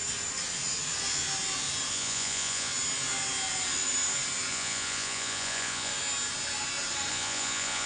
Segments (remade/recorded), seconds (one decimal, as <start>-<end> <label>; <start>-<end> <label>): 0.0-1.9 recorded; 1.9-2.7 remade; 2.7-4.5 recorded; 4.5-5.9 remade; 5.9-7.1 recorded; 7.1-7.9 remade